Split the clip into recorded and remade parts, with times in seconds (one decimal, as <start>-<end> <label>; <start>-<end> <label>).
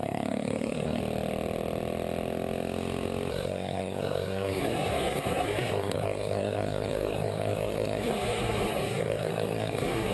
0.0-1.0 remade; 1.0-3.3 recorded; 3.3-10.1 remade